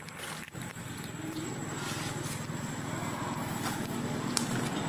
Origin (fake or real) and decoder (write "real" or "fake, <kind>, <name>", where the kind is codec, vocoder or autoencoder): real